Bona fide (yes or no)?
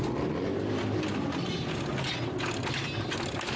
yes